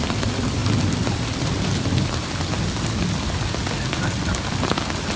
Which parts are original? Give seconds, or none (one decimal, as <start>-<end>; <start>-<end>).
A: 0.0-5.2